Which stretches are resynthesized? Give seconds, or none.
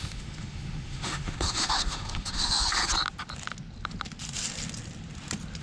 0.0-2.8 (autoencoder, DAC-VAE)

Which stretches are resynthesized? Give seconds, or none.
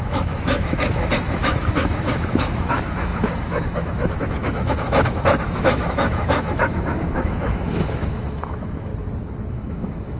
0.0-8.9 (autoencoder, DAC-VAE); 9.5-10.2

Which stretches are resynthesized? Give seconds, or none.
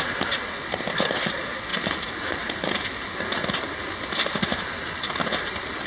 none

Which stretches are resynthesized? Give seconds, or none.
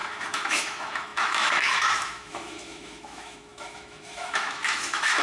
0.0-5.2 (autoencoder, DAC-VAE)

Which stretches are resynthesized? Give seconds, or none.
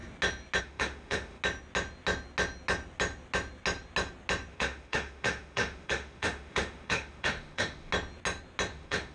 0.6-1.4 (autoencoder, DAC-VAE); 4.5-7.9; 8.7-9.1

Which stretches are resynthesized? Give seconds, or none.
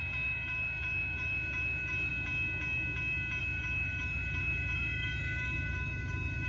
0.0-2.1 (autoencoder, DAC-VAE); 3.4-6.5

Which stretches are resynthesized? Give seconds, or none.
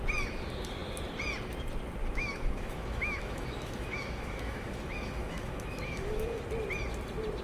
2.0-6.4 (autoencoder, DAC-VAE)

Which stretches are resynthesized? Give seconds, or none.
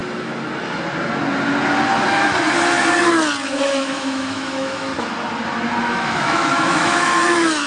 3.5-4.9 (autoencoder, DAC-VAE); 5.8-7.7